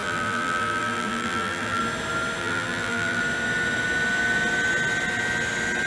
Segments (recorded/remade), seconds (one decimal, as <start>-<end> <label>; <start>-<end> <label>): 0.0-1.8 remade; 1.8-2.4 recorded; 2.4-3.2 remade; 3.2-5.9 recorded